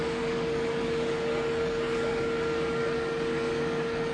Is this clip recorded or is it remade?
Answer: remade